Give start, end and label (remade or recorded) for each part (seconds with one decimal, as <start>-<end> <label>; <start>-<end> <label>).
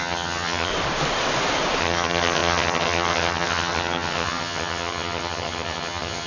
0.0-0.7 remade; 0.7-1.8 recorded; 1.8-6.3 remade